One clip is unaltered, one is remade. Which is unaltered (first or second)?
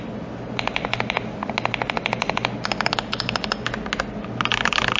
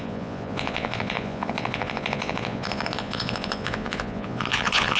first